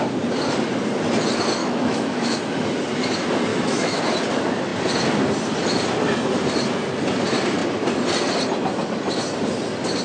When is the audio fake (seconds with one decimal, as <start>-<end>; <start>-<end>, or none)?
1.6-2.3; 3.5-4.0